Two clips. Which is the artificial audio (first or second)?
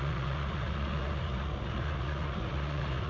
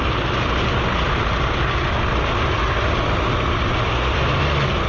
first